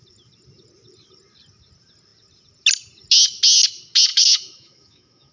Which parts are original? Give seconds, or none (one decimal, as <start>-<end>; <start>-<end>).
0.0-4.1